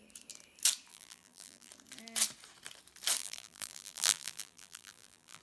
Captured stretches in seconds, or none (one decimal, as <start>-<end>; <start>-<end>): 0.0-0.9; 1.7-3.2